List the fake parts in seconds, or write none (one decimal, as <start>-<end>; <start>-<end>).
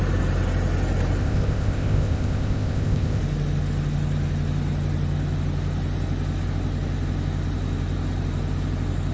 1.2-3.2